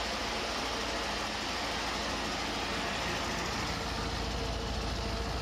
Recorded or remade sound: recorded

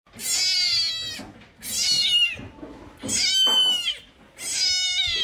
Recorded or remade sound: recorded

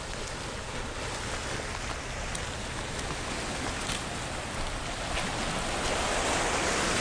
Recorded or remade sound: recorded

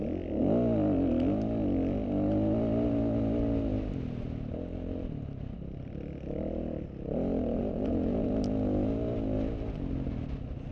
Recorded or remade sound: recorded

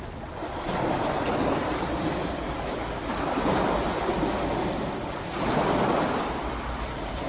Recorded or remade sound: recorded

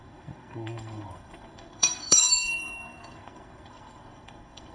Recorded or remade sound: remade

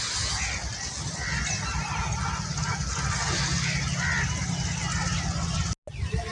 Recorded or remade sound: recorded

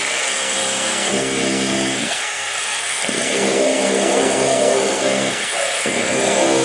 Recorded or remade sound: remade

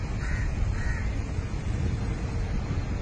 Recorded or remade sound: recorded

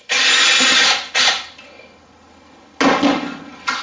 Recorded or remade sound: recorded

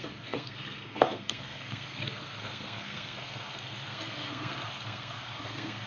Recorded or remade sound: remade